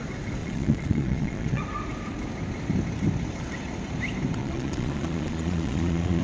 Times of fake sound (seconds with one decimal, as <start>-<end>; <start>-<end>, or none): 0.4-1.6; 4.4-6.2